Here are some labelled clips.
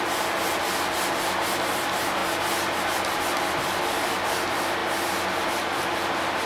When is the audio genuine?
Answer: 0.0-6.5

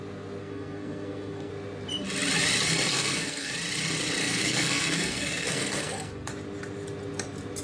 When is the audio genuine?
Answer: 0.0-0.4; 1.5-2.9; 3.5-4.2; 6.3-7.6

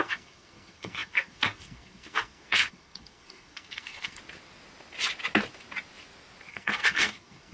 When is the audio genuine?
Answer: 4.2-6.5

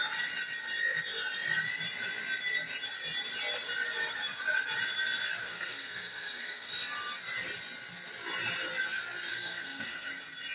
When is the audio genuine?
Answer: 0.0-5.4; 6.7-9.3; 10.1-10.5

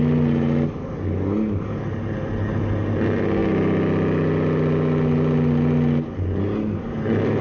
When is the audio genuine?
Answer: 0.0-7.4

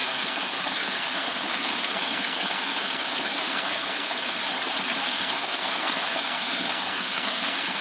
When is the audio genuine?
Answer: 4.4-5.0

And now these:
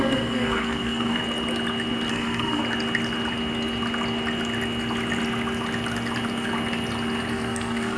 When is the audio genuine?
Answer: 1.2-2.1; 2.6-7.3

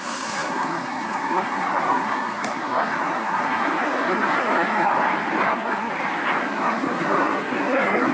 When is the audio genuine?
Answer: 4.9-5.4; 5.9-6.4